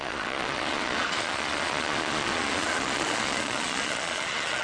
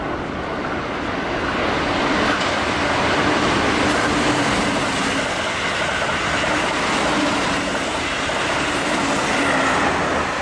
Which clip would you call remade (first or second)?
first